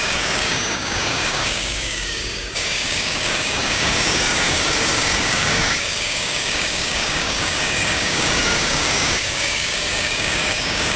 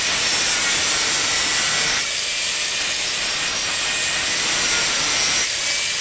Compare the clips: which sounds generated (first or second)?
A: first